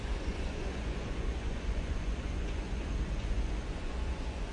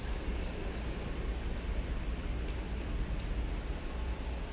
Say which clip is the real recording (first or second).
second